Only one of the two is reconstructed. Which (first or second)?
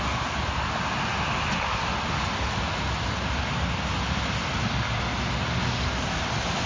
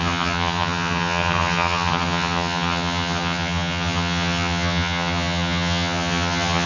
second